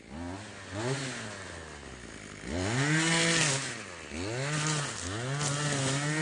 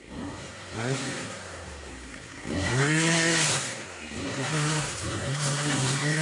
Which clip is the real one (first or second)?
first